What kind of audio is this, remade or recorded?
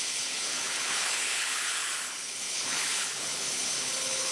remade